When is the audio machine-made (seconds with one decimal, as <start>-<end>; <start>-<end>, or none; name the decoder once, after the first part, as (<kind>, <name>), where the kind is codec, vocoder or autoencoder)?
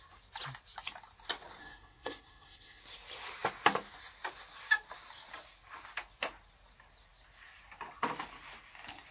1.6-2.8 (codec, SNAC)